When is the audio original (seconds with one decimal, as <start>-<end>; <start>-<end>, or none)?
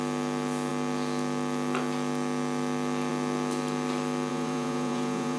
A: 0.0-4.3